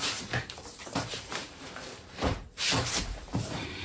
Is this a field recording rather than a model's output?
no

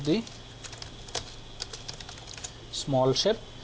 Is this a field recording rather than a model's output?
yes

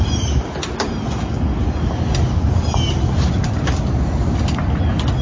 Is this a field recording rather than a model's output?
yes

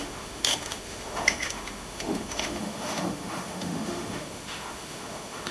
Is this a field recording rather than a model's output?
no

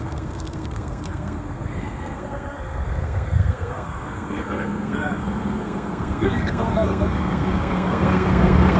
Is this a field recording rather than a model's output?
no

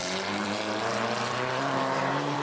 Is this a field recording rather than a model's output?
no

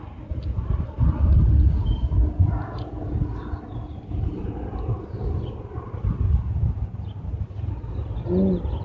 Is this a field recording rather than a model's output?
yes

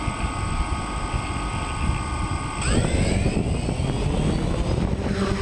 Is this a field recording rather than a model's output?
yes